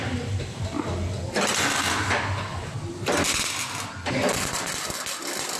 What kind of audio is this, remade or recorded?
recorded